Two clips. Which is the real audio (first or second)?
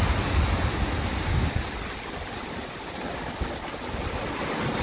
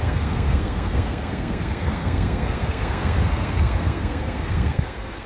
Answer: first